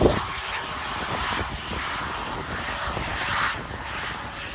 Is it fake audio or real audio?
real